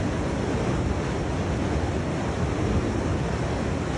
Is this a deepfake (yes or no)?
no